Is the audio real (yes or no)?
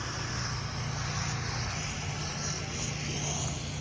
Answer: yes